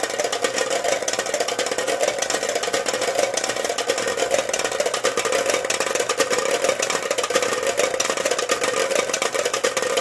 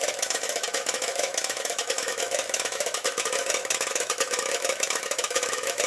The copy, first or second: second